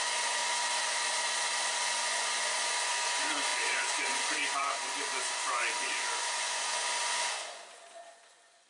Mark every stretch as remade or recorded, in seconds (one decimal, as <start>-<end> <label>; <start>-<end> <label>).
0.0-0.4 remade; 0.4-1.8 recorded; 1.8-8.7 remade